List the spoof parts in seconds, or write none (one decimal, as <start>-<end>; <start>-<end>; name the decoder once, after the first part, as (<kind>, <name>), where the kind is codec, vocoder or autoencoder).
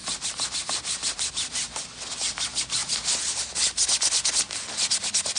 0.0-0.5 (vocoder, BigVGAN v2); 2.8-3.4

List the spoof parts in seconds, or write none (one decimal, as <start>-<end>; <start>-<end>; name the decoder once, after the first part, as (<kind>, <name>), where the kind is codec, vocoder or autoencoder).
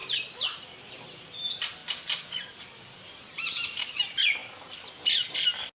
0.0-1.8 (vocoder, BigVGAN v2); 2.6-4.4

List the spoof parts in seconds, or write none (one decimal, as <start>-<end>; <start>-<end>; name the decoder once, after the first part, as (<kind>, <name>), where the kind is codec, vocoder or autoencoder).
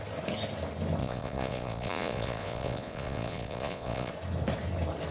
1.0-4.1 (vocoder, Vocos)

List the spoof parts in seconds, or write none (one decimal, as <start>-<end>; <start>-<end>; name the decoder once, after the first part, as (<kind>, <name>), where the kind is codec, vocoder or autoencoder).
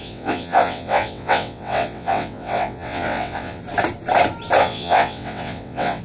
0.0-3.6 (vocoder, WaveNeXt); 4.6-6.0